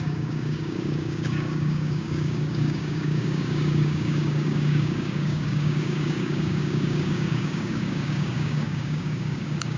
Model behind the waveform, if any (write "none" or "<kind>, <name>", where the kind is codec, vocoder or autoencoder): codec, DAC